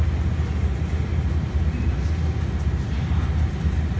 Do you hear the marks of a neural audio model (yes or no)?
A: no